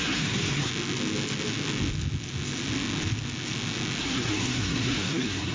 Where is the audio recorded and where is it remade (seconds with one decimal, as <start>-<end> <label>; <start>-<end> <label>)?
0.0-0.7 remade; 0.7-4.0 recorded; 4.0-5.5 remade